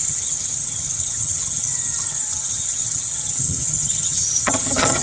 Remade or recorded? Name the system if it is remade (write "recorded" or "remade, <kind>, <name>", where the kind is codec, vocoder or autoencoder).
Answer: remade, vocoder, HiFi-GAN